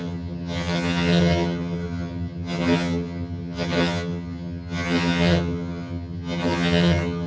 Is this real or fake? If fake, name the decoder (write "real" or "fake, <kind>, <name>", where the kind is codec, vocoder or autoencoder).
fake, vocoder, HiFi-GAN